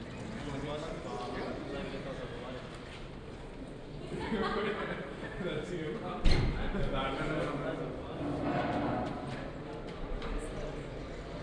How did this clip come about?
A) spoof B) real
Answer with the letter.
B